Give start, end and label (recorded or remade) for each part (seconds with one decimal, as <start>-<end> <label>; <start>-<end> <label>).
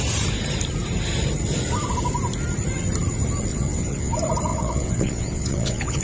0.0-3.5 recorded; 3.5-4.1 remade; 4.1-4.5 recorded; 4.5-6.0 remade